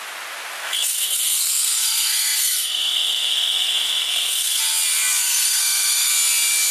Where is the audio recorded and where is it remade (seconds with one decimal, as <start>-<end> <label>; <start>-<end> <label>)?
0.0-0.6 recorded; 0.6-4.6 remade; 4.6-5.2 recorded; 5.2-6.1 remade; 6.1-6.7 recorded